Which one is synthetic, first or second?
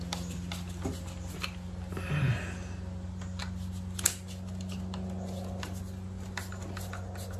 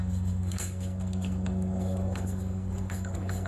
second